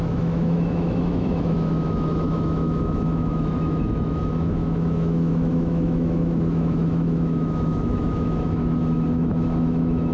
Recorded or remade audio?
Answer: remade